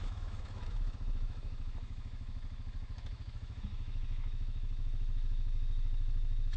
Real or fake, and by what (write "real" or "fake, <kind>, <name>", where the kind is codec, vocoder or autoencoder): fake, autoencoder, DAC-VAE